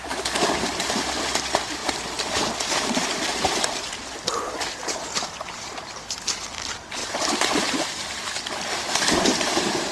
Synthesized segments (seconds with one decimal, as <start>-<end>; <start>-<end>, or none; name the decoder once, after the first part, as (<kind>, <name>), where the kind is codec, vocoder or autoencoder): 0.0-1.8 (vocoder, BigVGAN v2); 2.4-7.0; 7.5-9.9